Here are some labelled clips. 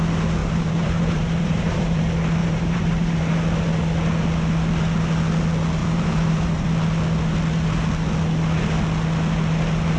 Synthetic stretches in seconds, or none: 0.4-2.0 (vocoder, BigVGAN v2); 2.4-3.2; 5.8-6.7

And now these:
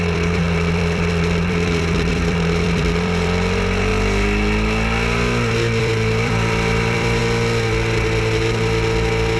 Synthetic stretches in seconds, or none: 0.0-3.9 (vocoder, BigVGAN v2); 5.8-7.2

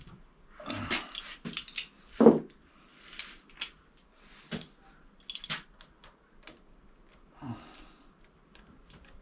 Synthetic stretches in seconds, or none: none

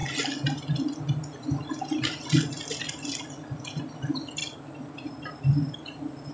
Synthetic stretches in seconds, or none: 4.4-6.3 (vocoder, BigVGAN v2)